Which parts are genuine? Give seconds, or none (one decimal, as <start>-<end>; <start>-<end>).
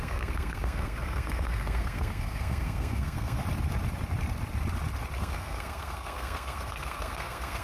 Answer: 3.4-5.2